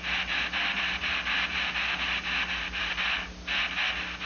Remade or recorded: recorded